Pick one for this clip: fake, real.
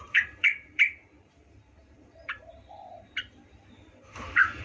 fake